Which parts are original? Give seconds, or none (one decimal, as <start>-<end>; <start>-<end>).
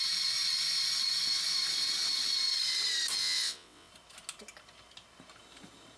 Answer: 0.0-3.2; 3.9-6.0